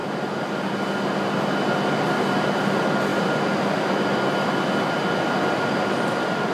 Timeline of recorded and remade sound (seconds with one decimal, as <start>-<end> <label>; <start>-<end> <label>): 0.0-6.5 recorded